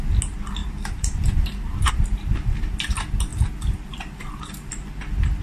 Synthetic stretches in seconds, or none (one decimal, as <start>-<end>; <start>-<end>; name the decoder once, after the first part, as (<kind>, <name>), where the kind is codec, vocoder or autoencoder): 0.6-1.9 (vocoder, BigVGAN v2)